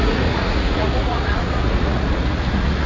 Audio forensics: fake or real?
fake